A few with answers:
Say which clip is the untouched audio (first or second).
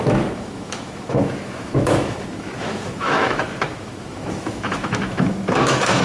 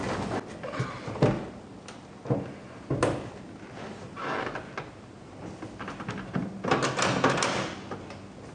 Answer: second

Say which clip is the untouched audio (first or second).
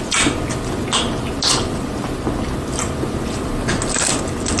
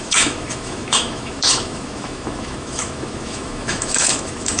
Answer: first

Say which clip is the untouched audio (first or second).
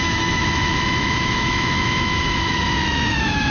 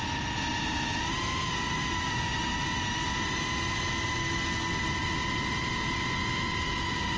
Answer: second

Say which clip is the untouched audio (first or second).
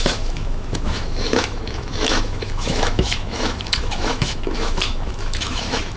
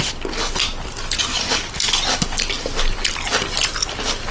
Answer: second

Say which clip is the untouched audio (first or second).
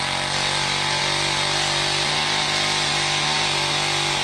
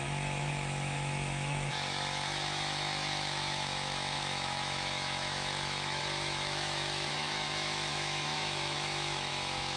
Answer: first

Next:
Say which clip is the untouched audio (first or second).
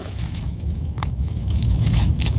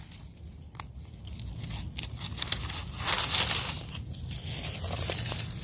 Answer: second